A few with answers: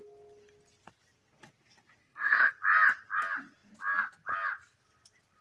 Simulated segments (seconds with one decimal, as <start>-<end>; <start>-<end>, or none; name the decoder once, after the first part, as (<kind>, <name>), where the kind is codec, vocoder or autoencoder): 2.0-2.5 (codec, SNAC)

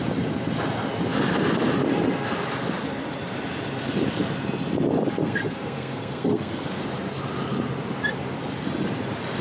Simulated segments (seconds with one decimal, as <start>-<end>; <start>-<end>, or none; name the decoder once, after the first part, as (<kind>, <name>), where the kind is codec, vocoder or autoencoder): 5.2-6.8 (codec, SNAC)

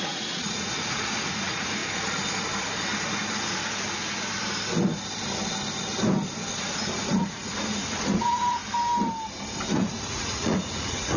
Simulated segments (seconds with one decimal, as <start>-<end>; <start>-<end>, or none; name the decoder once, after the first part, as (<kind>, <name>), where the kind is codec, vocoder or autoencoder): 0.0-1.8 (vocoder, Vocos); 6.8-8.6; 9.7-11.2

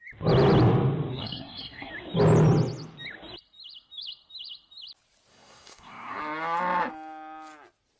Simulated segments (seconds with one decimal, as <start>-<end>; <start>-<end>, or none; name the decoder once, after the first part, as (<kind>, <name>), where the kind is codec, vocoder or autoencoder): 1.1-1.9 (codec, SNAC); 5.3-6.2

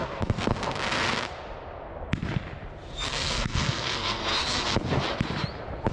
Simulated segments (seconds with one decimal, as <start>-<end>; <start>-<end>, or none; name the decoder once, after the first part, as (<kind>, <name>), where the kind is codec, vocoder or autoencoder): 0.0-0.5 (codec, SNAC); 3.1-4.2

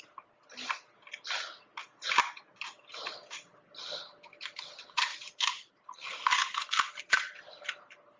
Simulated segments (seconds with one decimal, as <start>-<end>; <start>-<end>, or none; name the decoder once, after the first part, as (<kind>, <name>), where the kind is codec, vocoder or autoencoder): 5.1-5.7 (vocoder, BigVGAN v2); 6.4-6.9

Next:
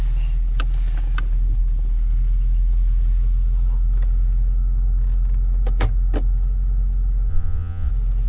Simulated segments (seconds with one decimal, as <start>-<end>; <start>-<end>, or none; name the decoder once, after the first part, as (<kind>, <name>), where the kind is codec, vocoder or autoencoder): 7.3-7.9 (vocoder, Vocos)